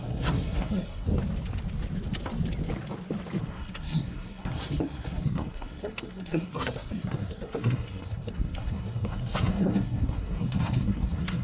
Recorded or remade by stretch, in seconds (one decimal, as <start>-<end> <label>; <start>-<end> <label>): 0.0-1.1 remade; 1.1-3.4 recorded; 3.4-11.4 remade